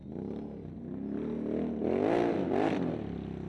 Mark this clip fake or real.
real